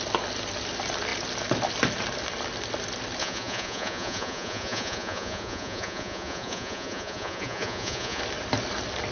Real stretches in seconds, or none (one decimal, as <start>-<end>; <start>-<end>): 0.0-3.2; 8.2-9.1